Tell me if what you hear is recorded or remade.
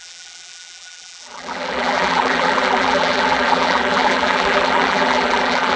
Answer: remade